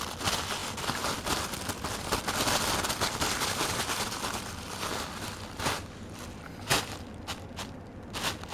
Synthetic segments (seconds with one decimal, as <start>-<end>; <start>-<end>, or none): 0.6-5.2